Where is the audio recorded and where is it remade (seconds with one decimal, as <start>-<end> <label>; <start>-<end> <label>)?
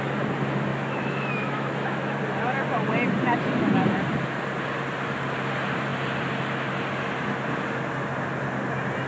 0.0-0.7 recorded; 0.7-2.2 remade; 2.2-9.1 recorded